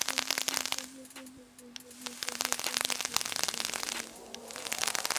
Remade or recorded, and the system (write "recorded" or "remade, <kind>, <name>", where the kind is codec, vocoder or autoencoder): recorded